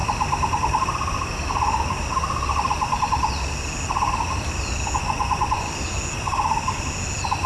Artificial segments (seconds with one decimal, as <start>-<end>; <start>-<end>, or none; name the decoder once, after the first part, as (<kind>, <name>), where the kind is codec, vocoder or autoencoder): 5.0-5.7 (vocoder, Vocos)